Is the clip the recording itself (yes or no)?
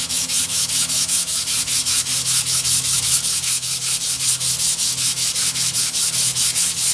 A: no